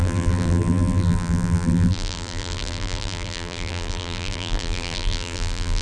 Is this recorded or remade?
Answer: remade